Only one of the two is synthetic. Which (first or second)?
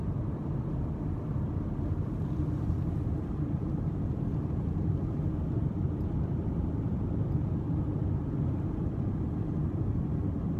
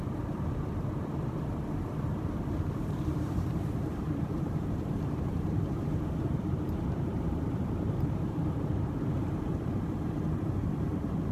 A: second